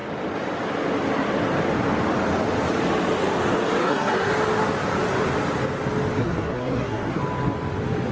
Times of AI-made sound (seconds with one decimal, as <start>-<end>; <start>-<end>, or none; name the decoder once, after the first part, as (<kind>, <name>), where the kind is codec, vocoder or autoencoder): 3.8-4.3 (codec, SNAC); 6.2-7.2